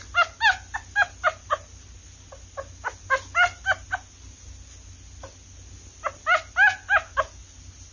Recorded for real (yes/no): yes